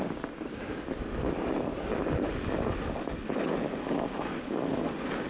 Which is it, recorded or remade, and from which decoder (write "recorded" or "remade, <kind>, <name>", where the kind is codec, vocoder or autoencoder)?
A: recorded